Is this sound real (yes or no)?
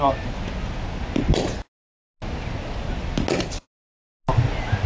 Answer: yes